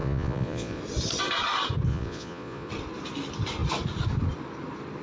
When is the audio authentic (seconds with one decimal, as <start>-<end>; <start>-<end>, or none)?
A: 0.8-1.9; 2.7-5.0